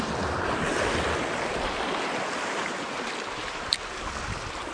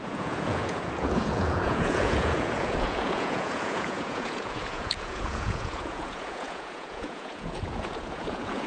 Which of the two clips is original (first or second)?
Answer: first